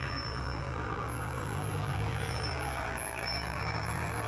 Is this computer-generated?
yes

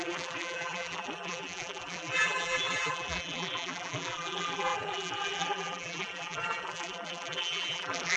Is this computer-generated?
yes